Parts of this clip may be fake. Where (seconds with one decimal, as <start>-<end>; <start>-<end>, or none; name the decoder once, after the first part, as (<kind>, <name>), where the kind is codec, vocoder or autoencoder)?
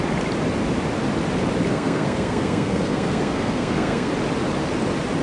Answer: 1.7-4.1 (codec, SNAC)